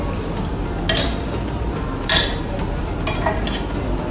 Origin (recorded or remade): recorded